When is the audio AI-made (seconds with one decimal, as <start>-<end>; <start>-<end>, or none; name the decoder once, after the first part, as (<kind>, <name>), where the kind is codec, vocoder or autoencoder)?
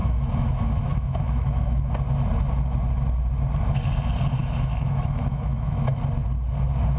0.0-1.9 (autoencoder, DAC-VAE); 4.4-6.0